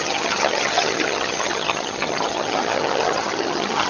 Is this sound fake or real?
fake